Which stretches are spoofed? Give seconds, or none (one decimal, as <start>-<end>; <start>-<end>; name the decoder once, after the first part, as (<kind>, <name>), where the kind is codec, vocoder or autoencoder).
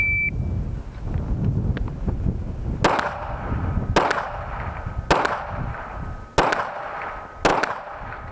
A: none